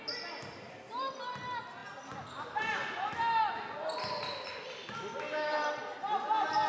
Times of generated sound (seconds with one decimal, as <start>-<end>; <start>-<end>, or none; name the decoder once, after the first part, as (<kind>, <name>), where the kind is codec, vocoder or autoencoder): none